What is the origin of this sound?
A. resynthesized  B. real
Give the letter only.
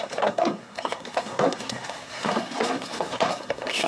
A